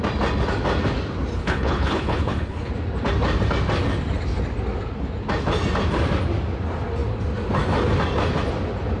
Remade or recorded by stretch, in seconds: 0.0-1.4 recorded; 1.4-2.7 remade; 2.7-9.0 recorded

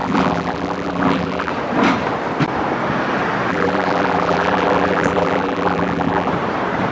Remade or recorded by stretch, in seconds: 0.0-1.5 remade; 1.5-3.5 recorded; 3.5-6.3 remade; 6.3-6.9 recorded

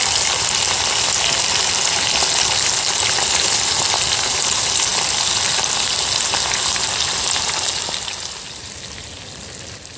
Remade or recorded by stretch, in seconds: 0.0-10.0 recorded

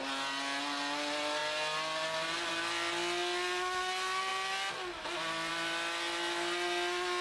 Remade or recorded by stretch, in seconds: 0.0-7.2 recorded

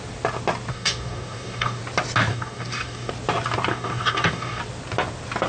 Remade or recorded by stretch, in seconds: 0.0-0.7 recorded; 0.7-1.8 remade; 1.8-2.3 recorded; 2.3-3.1 remade; 3.1-3.7 recorded; 3.7-4.6 remade; 4.6-5.5 recorded